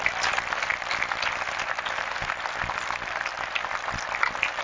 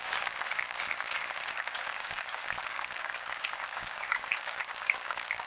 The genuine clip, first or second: first